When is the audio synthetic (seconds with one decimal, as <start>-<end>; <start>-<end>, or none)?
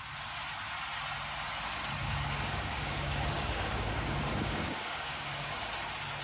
2.0-5.7